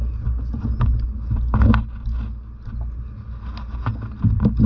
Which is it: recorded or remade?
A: recorded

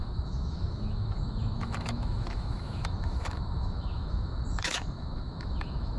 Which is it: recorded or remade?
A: remade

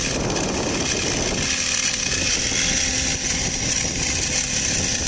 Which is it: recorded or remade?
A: recorded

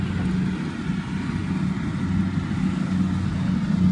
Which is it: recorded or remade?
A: recorded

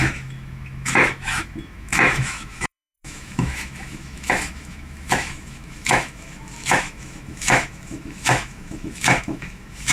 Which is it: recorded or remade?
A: remade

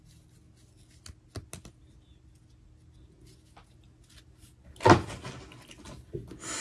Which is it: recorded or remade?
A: recorded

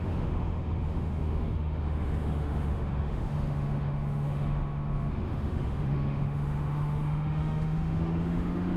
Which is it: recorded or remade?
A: remade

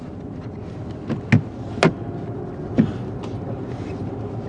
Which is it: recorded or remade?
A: recorded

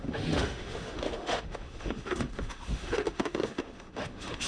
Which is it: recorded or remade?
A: remade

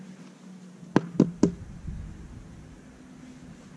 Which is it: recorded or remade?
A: recorded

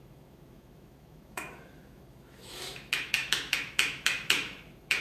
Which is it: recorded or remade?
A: remade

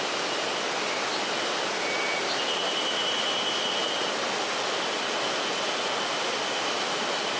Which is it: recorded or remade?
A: recorded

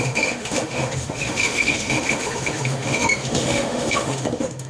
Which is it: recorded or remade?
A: remade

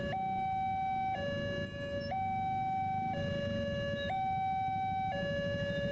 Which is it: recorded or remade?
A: recorded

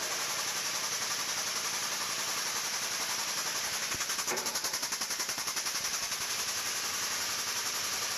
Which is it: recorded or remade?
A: recorded